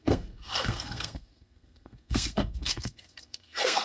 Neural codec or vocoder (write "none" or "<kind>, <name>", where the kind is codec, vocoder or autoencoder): codec, SNAC